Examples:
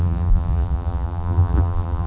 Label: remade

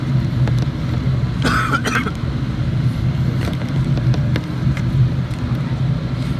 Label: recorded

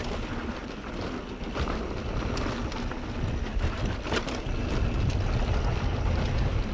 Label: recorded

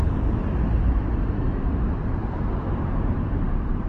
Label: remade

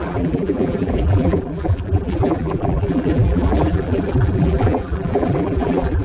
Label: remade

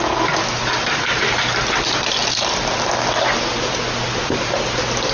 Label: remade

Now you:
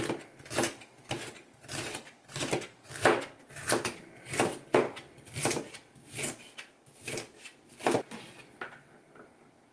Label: recorded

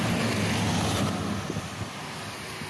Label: recorded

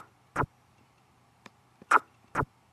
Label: remade